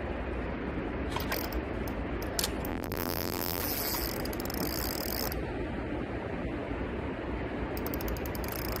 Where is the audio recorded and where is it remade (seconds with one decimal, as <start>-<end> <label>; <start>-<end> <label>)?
0.0-2.7 recorded; 2.7-3.6 remade; 3.6-8.8 recorded